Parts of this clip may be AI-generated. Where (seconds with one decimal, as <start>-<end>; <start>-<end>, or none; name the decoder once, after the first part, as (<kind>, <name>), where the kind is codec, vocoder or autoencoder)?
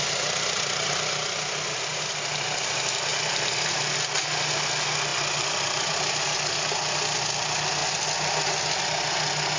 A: 3.1-4.0 (vocoder, BigVGAN v2); 5.1-5.9